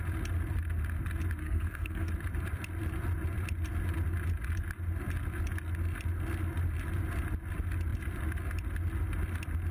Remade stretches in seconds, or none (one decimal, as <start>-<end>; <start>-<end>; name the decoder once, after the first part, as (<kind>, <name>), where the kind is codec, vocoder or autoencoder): 1.4-2.1 (codec, SNAC)